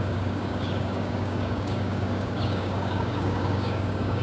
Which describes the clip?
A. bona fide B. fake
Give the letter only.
B